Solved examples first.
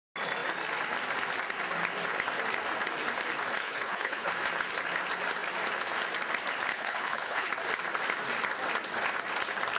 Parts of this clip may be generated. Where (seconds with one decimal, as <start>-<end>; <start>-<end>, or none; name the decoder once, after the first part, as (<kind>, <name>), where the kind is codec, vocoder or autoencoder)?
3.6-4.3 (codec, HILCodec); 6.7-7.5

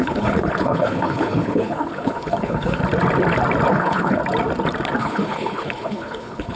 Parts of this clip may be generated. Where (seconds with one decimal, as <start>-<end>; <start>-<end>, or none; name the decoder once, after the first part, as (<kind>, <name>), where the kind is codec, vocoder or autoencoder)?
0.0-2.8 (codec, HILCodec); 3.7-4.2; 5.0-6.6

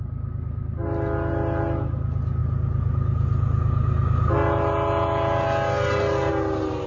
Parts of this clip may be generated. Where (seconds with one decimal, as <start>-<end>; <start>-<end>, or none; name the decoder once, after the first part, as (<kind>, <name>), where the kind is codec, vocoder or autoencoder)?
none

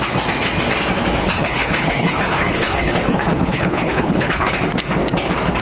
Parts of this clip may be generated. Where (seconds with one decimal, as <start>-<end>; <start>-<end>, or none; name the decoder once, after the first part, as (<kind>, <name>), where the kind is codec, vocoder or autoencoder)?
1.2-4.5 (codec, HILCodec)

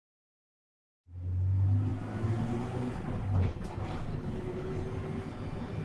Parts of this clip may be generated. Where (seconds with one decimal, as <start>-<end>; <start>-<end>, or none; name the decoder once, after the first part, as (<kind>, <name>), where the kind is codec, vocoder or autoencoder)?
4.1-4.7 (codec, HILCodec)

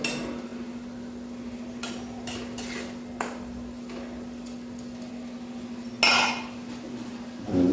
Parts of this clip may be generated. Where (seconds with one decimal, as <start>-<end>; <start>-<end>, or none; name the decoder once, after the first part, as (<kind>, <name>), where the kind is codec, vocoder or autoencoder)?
none